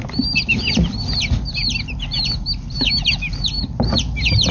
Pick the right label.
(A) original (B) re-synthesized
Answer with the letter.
A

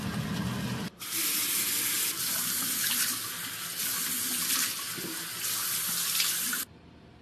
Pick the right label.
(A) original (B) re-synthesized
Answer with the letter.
A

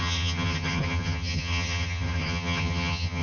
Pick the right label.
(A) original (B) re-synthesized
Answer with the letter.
B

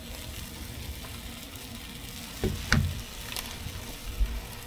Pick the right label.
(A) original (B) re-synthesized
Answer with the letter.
A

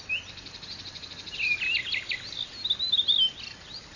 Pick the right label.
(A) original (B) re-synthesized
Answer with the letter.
A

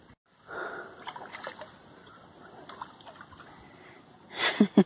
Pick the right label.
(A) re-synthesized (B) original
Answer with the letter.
B